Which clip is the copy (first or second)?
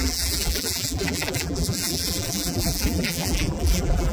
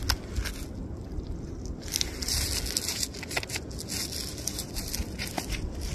first